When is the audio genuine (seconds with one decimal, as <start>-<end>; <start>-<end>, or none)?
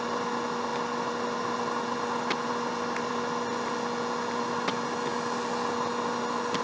0.0-6.6